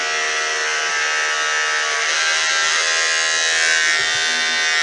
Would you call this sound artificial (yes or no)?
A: no